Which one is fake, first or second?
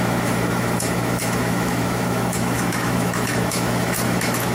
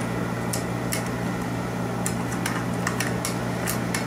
first